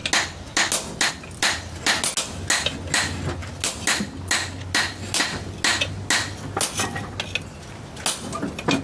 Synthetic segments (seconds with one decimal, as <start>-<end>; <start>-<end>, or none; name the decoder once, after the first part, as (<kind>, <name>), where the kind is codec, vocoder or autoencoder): none